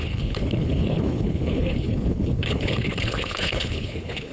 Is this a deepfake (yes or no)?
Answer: yes